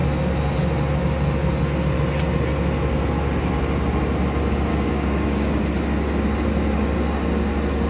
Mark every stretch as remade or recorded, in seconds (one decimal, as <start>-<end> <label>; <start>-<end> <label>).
0.0-4.7 recorded; 4.7-5.6 remade; 5.6-7.9 recorded